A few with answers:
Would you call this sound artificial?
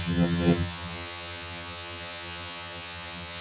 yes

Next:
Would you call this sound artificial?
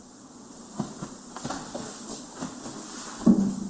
no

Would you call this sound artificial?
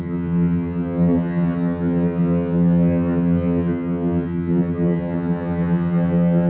yes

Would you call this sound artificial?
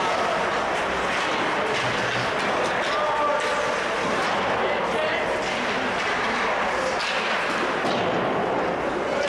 no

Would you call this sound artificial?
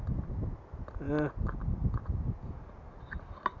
no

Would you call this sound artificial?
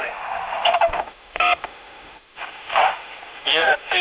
yes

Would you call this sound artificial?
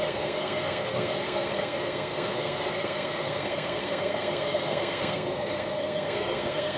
yes